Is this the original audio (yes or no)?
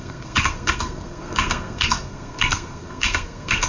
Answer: no